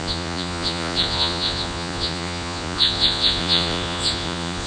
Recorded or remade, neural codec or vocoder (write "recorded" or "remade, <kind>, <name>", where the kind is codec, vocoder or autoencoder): remade, vocoder, Vocos